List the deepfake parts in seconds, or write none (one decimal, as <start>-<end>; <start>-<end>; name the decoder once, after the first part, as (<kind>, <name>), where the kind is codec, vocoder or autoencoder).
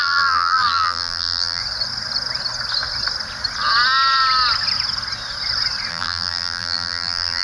0.0-1.6 (vocoder, BigVGAN v2); 5.9-7.4